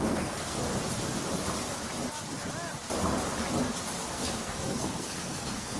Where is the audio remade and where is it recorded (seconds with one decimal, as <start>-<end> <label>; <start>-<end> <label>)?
0.0-0.6 remade; 0.6-4.1 recorded; 4.1-5.8 remade